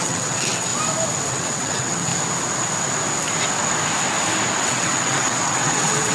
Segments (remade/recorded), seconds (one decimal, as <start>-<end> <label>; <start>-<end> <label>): 0.0-0.7 remade; 0.7-1.3 recorded; 1.3-2.1 remade; 2.1-4.6 recorded; 4.6-6.1 remade